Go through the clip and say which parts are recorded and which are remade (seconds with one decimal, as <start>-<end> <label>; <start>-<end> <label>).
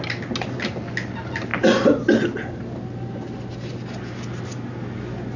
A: 0.0-5.4 recorded